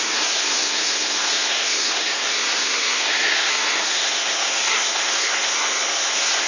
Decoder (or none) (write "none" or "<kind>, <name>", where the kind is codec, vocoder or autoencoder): codec, SNAC